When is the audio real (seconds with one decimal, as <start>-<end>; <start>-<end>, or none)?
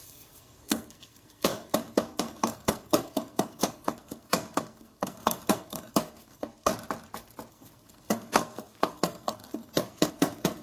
6.7-7.5